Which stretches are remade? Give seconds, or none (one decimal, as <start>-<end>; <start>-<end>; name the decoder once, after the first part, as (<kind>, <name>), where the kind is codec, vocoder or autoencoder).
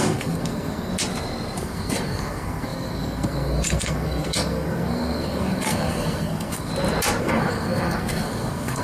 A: 0.0-0.9 (codec, SNAC); 1.6-6.7; 7.2-8.8